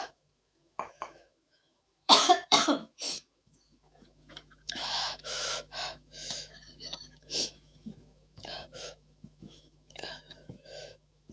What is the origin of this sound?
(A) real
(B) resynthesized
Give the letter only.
B